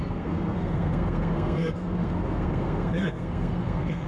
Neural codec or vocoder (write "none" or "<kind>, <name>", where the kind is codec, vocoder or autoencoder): codec, SNAC